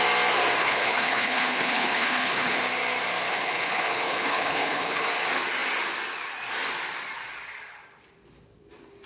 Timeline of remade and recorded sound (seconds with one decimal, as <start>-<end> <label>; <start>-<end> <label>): 0.0-0.6 recorded; 0.6-2.6 remade; 2.6-3.3 recorded; 3.3-5.1 remade; 5.1-9.1 recorded